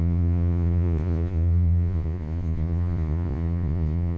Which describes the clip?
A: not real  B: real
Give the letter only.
A